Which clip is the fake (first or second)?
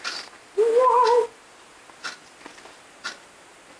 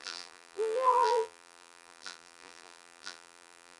second